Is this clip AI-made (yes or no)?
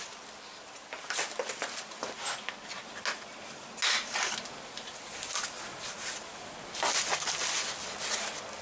no